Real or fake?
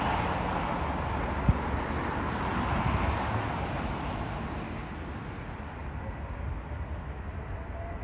real